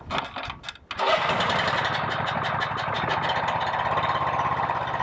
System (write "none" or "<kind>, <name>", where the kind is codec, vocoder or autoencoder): none